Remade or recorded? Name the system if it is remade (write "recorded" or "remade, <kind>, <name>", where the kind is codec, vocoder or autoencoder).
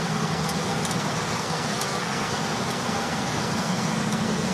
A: remade, codec, SNAC